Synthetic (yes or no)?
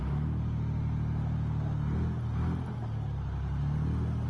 no